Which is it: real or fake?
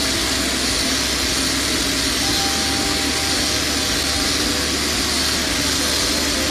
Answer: real